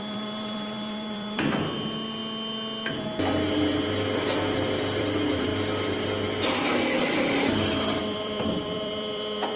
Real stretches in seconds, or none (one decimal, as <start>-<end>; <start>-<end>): 2.2-5.0; 5.5-8.0